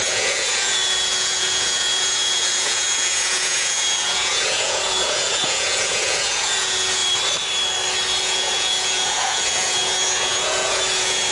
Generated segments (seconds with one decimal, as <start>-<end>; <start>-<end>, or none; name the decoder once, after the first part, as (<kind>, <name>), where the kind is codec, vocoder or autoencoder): 0.0-7.0 (vocoder, Vocos); 8.2-11.3